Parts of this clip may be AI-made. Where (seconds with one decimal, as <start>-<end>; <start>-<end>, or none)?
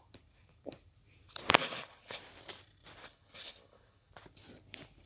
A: 1.6-2.2; 3.0-4.1